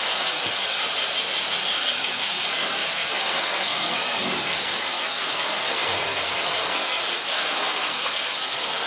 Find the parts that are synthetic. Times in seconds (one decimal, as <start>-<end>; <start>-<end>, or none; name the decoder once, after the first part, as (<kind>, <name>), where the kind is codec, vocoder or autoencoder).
0.0-0.8 (codec, SNAC); 1.6-8.9